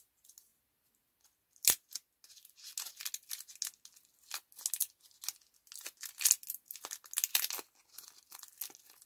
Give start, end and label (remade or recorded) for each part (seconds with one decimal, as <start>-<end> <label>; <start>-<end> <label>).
0.0-9.1 recorded